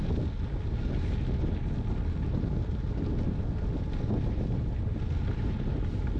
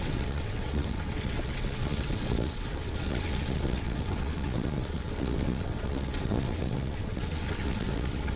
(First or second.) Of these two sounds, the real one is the first